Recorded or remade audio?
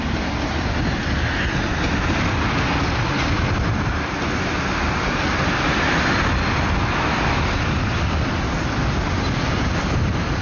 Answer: recorded